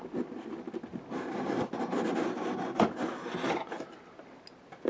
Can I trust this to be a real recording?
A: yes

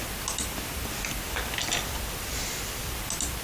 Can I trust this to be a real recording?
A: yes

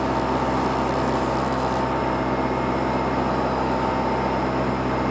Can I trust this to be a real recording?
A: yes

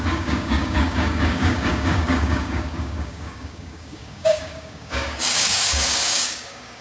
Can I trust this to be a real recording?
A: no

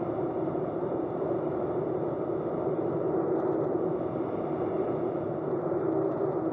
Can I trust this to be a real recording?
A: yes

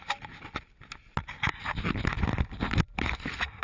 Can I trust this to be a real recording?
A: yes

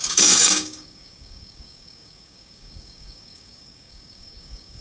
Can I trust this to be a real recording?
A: no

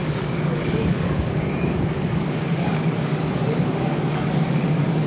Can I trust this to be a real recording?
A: no